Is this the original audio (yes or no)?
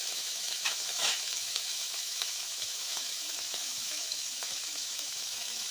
no